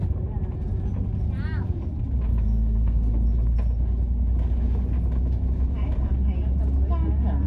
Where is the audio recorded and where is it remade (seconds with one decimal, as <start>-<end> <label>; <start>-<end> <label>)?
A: 0.0-2.3 recorded; 2.3-3.1 remade; 3.1-7.5 recorded

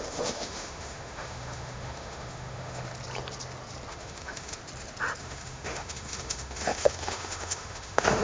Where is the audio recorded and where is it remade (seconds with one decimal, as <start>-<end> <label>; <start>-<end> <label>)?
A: 0.0-2.9 remade; 2.9-3.9 recorded; 3.9-4.6 remade; 4.6-5.2 recorded; 5.2-8.2 remade

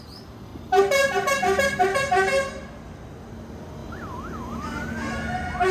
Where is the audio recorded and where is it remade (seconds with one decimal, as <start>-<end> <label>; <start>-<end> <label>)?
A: 0.0-5.7 recorded

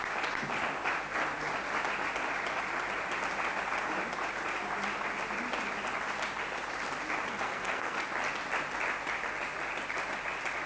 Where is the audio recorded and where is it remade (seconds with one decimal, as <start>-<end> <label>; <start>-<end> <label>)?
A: 0.0-7.3 recorded; 7.3-8.1 remade; 8.1-10.7 recorded

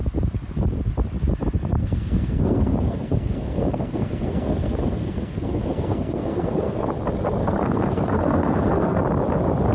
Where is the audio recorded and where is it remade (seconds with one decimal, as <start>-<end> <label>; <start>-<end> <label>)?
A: 0.0-1.8 recorded; 1.8-6.9 remade; 6.9-7.4 recorded; 7.4-9.0 remade; 9.0-9.7 recorded

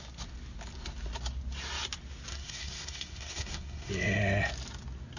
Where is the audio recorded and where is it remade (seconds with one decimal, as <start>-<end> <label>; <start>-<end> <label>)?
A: 0.0-2.3 recorded; 2.3-3.9 remade; 3.9-5.2 recorded

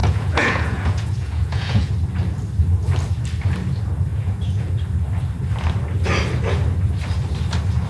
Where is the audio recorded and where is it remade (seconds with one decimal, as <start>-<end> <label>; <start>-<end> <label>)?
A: 0.0-1.9 remade; 1.9-4.1 recorded; 4.1-4.7 remade; 4.7-7.9 recorded